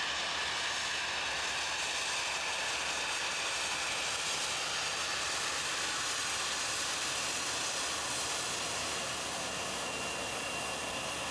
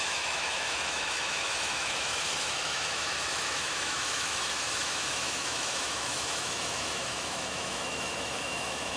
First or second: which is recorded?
first